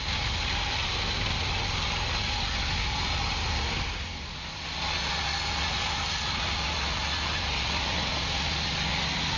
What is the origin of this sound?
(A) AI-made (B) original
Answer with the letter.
B